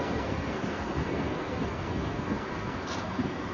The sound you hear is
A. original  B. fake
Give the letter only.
B